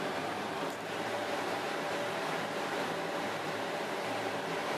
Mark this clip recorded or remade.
remade